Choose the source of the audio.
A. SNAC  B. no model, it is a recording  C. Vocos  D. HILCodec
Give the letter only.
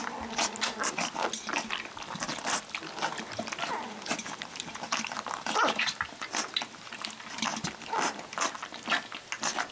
B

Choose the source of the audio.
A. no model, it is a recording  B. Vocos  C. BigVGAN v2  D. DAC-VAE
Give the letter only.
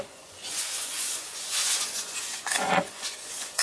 B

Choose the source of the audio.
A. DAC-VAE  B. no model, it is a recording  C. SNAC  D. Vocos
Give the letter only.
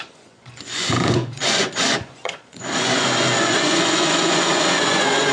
D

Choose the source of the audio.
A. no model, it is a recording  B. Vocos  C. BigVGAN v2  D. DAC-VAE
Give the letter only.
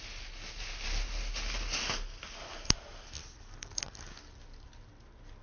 A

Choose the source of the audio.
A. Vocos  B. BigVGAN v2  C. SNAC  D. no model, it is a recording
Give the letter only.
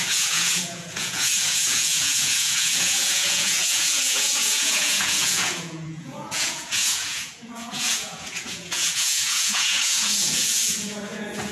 A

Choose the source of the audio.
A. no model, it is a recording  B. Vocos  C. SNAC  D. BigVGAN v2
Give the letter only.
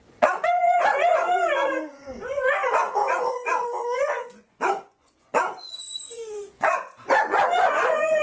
B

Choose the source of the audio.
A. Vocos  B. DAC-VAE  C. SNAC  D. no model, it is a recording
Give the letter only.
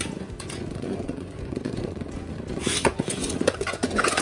A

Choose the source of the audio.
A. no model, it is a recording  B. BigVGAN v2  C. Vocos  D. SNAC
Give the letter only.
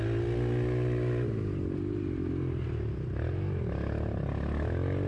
A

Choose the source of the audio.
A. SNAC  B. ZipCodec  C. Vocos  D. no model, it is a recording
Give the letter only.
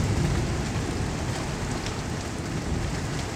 D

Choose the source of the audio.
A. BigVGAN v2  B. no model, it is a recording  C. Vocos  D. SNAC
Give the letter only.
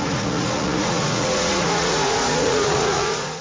C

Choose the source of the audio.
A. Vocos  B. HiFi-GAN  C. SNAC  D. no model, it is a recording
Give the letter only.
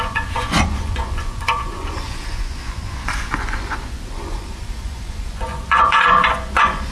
A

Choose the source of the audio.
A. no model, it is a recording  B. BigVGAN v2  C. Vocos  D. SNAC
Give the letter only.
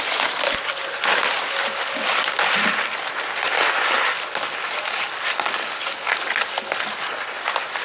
A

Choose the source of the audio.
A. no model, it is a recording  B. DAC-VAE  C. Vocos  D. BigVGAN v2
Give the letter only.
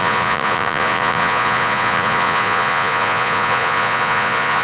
C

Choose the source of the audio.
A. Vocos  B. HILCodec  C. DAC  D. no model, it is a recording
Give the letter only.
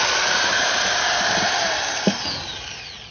D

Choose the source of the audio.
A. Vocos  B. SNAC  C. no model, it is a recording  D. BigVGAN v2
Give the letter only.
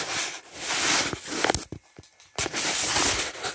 C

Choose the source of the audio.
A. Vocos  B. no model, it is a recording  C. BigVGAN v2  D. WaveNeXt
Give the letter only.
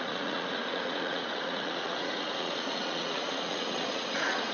A